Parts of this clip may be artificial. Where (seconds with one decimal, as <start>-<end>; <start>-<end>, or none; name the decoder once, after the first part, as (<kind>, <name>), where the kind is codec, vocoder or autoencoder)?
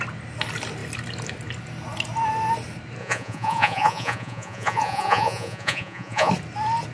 3.0-6.3 (vocoder, Vocos)